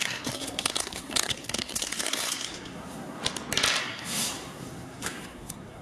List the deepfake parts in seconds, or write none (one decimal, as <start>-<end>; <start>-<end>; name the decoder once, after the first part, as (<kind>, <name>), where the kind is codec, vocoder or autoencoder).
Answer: 0.0-3.2 (codec, SNAC); 3.8-5.8